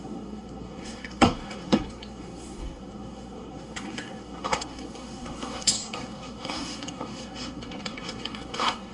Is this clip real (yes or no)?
no